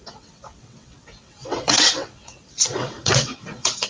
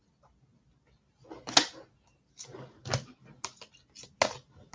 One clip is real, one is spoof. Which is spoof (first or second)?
first